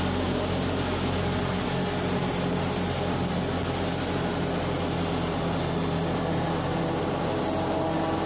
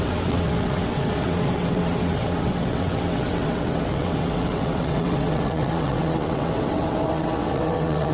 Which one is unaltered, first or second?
first